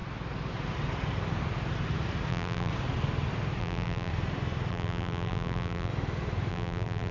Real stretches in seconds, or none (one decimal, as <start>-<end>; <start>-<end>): 0.0-2.3; 2.7-3.6; 4.1-4.7; 5.9-6.5